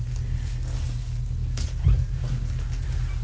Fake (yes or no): no